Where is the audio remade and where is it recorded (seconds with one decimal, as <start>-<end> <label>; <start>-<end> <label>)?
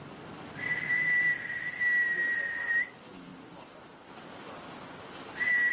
0.0-5.7 recorded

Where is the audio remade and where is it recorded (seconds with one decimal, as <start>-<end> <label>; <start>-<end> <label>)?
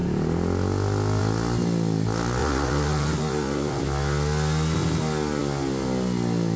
0.0-2.4 recorded; 2.4-3.8 remade; 3.8-6.6 recorded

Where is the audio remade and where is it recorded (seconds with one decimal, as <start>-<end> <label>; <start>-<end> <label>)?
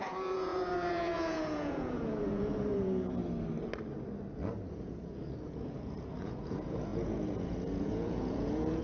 0.0-3.2 remade; 3.2-4.7 recorded; 4.7-8.8 remade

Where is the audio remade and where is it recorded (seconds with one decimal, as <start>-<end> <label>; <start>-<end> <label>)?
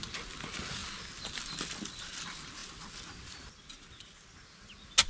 0.0-0.8 recorded; 0.8-2.2 remade; 2.2-5.1 recorded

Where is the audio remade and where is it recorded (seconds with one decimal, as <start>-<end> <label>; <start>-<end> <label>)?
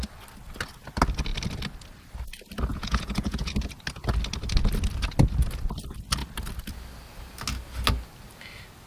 0.0-2.7 recorded; 2.7-3.5 remade; 3.5-8.9 recorded